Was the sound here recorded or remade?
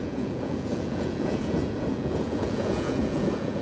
remade